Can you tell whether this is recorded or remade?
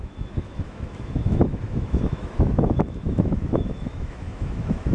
remade